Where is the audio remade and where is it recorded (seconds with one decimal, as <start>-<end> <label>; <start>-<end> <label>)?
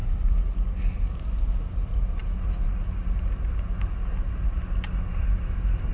0.0-1.1 remade; 1.1-5.9 recorded